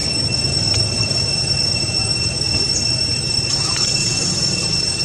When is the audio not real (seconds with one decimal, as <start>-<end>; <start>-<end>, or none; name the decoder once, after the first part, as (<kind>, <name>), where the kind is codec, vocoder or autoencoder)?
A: none